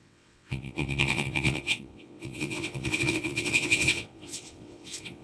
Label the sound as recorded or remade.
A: remade